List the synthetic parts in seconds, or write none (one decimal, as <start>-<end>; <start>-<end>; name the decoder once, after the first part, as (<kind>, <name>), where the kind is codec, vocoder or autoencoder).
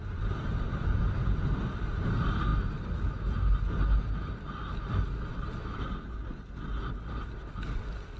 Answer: none